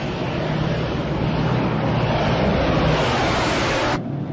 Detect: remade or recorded recorded